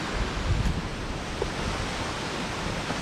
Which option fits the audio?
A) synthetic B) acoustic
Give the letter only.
B